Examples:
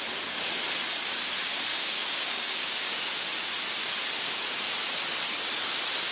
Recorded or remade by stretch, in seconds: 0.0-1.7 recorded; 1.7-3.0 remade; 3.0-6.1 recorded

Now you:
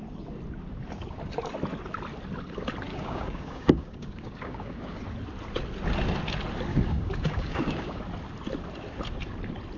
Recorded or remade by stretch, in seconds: 0.0-2.9 recorded; 2.9-5.0 remade; 5.0-6.7 recorded; 6.7-8.0 remade; 8.0-9.8 recorded